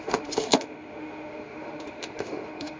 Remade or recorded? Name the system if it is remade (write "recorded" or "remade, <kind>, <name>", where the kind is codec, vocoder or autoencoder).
remade, autoencoder, DAC-VAE